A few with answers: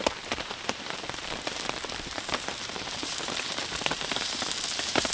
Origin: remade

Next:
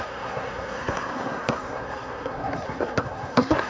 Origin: remade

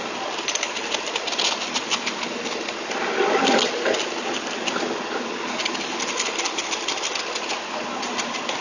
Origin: recorded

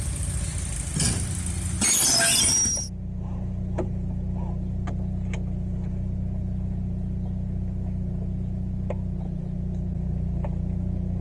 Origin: recorded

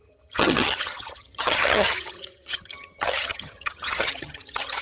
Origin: remade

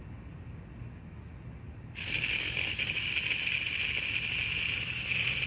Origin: recorded